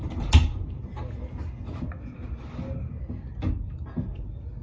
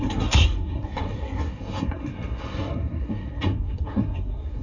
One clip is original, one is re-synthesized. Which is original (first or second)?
first